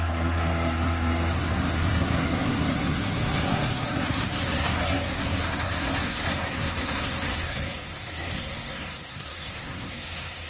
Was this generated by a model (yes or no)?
yes